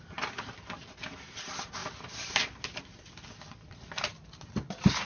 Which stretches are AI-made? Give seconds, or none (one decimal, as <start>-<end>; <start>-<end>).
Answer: none

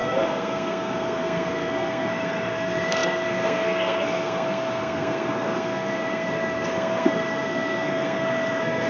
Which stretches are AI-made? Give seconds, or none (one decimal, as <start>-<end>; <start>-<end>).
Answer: 0.0-8.9